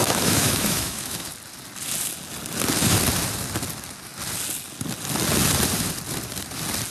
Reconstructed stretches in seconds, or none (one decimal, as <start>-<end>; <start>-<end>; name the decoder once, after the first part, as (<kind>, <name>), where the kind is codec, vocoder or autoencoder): 0.0-1.3 (autoencoder, DAC-VAE)